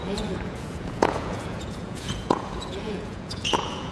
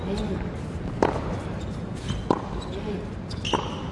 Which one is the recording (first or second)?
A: second